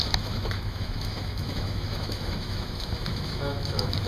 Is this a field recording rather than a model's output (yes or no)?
no